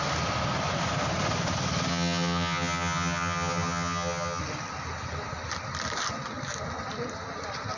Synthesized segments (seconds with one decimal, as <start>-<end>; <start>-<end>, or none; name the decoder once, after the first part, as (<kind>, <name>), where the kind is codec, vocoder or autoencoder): 1.9-4.4 (vocoder, HiFi-GAN)